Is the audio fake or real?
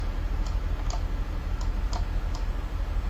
real